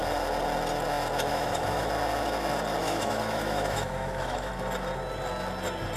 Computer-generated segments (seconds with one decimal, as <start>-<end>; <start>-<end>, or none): 1.3-1.9; 2.8-4.5